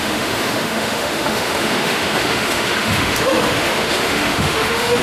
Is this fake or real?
fake